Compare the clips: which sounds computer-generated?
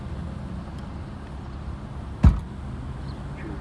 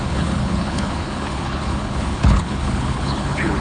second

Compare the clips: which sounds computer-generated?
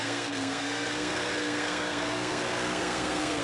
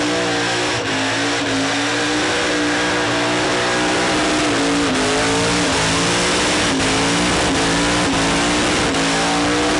first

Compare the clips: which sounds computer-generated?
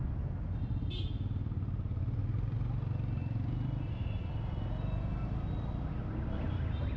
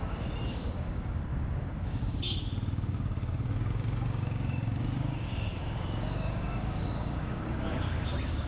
second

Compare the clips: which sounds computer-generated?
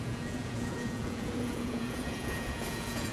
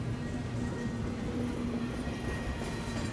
first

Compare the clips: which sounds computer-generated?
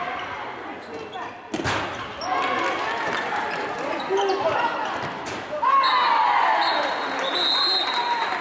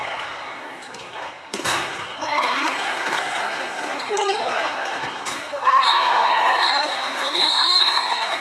second